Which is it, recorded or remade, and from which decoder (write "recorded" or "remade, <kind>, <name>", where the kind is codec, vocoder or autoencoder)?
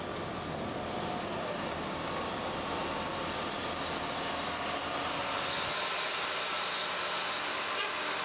recorded